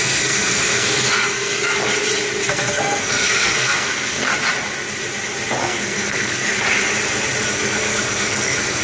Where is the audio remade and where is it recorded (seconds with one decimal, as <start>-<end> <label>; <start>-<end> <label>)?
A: 0.0-1.7 remade; 1.7-2.5 recorded; 2.5-4.3 remade; 4.3-5.6 recorded; 5.6-6.5 remade; 6.5-7.5 recorded; 7.5-8.8 remade